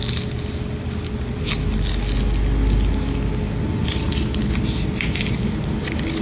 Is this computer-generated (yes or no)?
no